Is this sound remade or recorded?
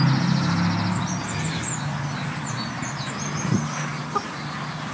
recorded